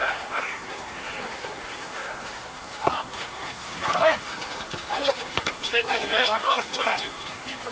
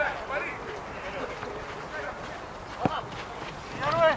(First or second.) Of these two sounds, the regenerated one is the first